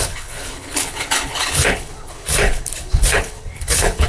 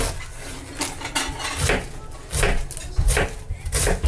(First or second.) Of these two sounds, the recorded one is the second